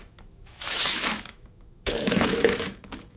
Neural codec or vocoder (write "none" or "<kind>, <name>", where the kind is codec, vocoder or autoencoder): autoencoder, DAC-VAE